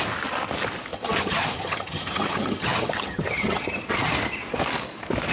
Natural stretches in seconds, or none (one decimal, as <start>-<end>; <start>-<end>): 0.0-0.9; 3.7-5.3